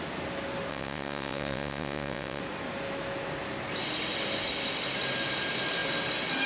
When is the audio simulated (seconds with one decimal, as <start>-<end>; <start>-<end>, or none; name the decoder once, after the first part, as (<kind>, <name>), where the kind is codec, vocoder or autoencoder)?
0.7-2.4 (vocoder, WaveNeXt)